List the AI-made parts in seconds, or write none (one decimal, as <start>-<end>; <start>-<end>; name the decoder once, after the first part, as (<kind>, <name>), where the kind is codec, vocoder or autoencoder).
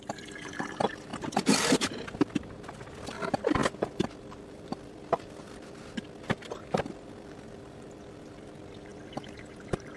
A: 0.0-8.9 (vocoder, BigVGAN v2)